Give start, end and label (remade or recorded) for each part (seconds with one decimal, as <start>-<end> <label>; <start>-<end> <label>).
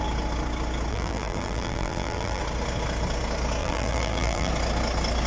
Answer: 0.0-0.9 recorded; 0.9-2.4 remade; 2.4-3.6 recorded; 3.6-4.5 remade; 4.5-5.3 recorded